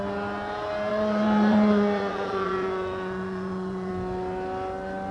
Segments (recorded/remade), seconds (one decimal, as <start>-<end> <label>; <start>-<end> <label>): 0.0-0.9 recorded; 0.9-3.9 remade; 3.9-5.1 recorded